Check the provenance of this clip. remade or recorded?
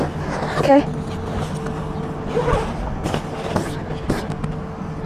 recorded